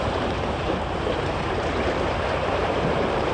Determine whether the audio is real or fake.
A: fake